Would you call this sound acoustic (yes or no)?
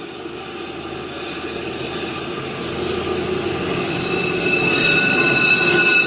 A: yes